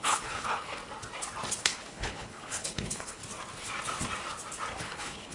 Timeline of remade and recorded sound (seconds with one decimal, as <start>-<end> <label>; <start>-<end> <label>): 0.0-0.8 remade; 0.8-1.6 recorded; 1.6-3.2 remade; 3.2-4.8 recorded; 4.8-5.3 remade